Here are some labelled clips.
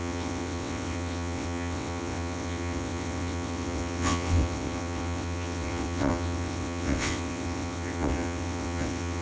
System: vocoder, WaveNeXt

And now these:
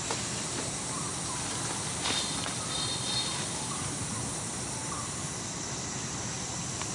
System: none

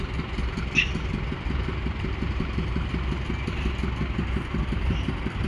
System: none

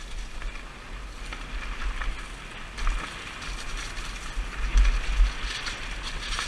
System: none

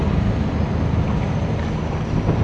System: none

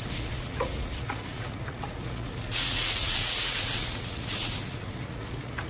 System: vocoder, Vocos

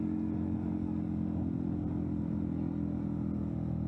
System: none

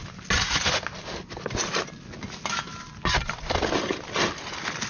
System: none